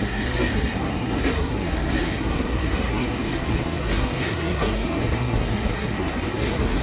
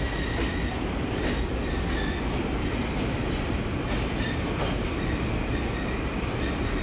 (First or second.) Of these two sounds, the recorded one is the second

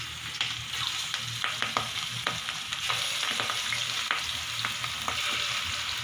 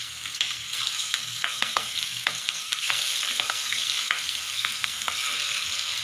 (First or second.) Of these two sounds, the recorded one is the first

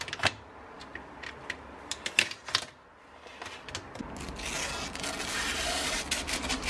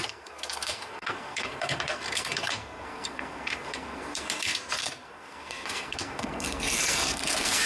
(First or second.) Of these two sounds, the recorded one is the first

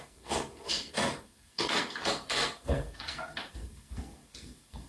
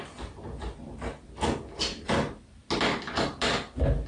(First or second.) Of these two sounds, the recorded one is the second